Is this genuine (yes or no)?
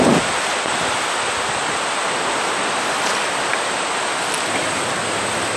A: yes